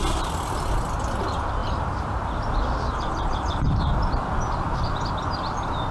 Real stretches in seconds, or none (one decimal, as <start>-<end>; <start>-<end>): 0.0-1.6; 5.1-5.9